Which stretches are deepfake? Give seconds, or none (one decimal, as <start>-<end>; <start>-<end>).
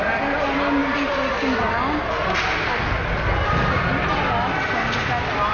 none